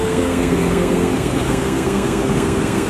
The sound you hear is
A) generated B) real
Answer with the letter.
A